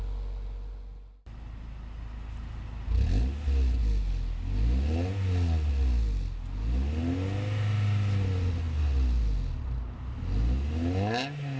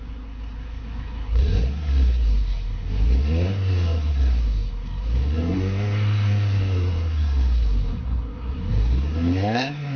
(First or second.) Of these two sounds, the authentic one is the first